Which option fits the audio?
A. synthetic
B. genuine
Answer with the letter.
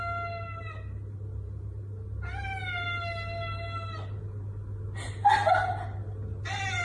B